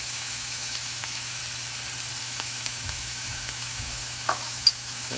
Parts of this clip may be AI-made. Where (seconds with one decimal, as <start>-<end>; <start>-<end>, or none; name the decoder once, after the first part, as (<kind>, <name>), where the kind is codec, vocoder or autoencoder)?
0.0-1.4 (autoencoder, DAC-VAE); 2.2-5.2